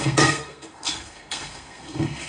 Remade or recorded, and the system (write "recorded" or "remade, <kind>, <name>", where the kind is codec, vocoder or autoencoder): remade, codec, SNAC